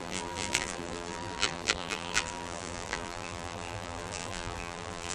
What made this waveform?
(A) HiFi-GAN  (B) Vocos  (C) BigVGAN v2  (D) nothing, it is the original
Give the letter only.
C